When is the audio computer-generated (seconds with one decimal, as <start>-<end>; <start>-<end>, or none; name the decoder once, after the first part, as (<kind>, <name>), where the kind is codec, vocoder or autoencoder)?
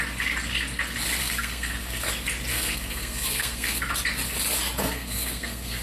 1.2-2.1 (codec, SNAC); 2.5-3.8; 4.8-5.8